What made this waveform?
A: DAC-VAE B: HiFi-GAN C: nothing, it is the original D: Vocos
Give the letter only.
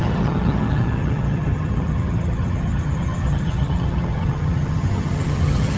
B